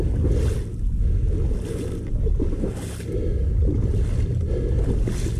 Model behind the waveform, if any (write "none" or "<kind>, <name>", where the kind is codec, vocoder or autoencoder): none